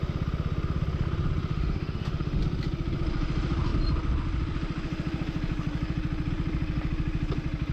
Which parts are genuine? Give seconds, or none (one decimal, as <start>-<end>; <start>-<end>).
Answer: 0.0-1.5; 2.4-7.7